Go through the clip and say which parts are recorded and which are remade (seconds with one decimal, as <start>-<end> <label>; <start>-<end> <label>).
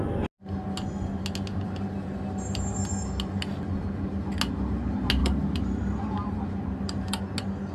0.0-1.5 recorded; 1.5-2.9 remade; 2.9-5.2 recorded; 5.2-7.2 remade; 7.2-7.7 recorded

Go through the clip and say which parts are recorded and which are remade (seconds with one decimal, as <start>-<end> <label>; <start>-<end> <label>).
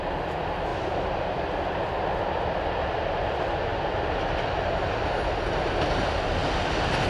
0.0-0.7 recorded; 0.7-1.8 remade; 1.8-7.1 recorded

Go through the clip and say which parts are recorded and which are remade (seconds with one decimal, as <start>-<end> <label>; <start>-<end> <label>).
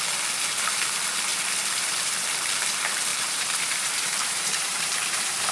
0.0-3.1 recorded; 3.1-5.5 remade